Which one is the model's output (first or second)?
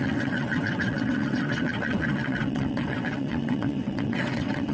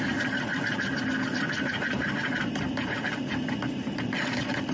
first